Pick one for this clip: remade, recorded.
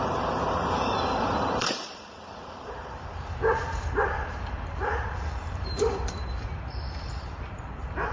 remade